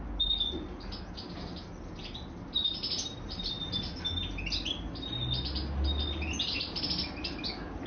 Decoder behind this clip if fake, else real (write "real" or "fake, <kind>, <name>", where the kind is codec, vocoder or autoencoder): real